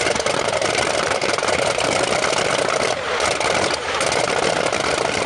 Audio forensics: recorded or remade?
remade